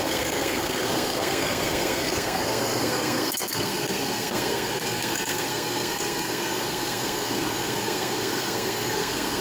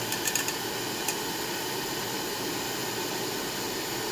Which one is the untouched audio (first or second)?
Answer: second